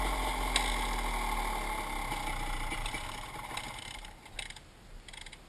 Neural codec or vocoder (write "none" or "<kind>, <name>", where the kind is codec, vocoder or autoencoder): none